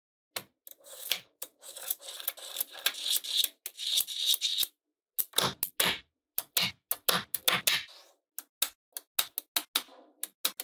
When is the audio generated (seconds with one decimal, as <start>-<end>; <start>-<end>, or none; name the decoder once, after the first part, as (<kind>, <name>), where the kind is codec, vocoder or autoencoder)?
0.7-2.0 (codec, DAC)